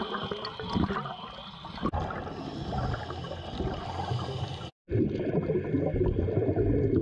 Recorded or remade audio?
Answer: recorded